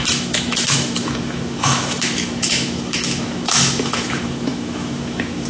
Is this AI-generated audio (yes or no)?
yes